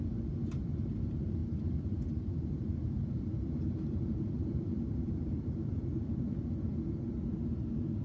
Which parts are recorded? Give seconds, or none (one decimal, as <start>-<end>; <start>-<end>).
0.0-1.4; 6.2-8.0